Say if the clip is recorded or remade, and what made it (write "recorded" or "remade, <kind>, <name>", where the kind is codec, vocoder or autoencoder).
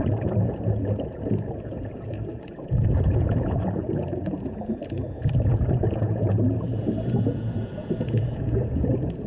remade, vocoder, Vocos